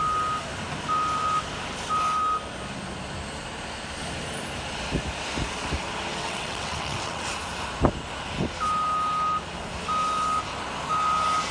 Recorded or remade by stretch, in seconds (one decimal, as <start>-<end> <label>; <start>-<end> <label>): 0.0-6.2 recorded; 6.2-7.3 remade; 7.3-11.5 recorded